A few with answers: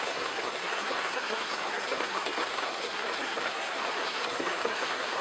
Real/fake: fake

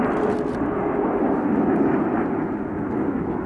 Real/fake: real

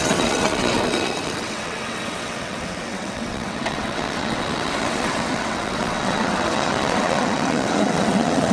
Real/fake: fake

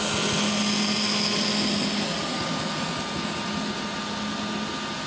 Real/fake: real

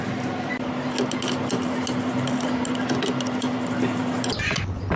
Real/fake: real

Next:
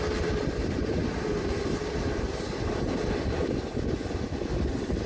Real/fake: real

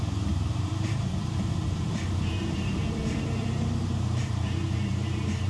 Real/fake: fake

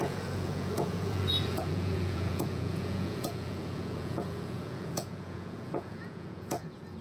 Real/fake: fake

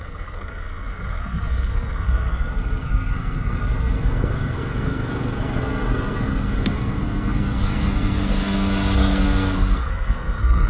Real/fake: fake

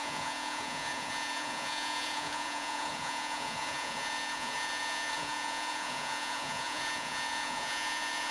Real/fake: fake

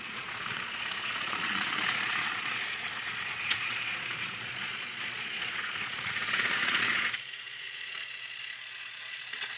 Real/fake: fake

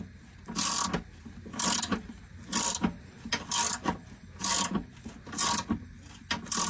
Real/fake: real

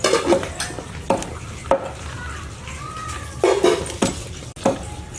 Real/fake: real